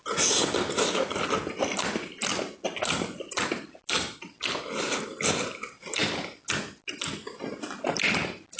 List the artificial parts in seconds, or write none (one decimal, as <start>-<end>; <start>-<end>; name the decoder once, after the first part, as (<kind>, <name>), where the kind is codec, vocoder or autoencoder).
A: none